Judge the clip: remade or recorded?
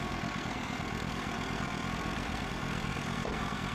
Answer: remade